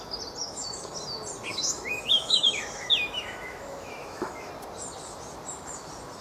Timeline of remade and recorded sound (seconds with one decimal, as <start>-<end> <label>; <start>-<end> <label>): 0.0-0.4 recorded; 0.4-0.9 remade; 0.9-1.5 recorded; 1.5-4.5 remade; 4.5-6.2 recorded